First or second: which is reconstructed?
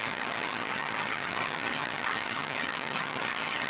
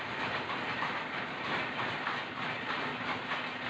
first